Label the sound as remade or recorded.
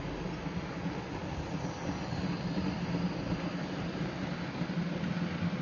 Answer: recorded